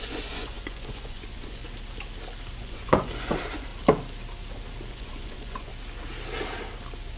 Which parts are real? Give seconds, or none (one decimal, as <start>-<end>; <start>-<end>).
1.6-2.6; 3.7-4.9; 5.7-7.2